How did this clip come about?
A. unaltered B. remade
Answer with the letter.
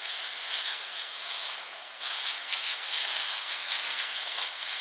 B